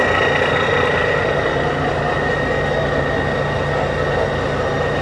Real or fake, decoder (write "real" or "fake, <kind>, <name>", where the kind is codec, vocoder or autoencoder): real